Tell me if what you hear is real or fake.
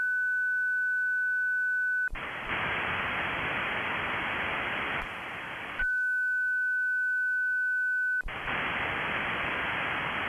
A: real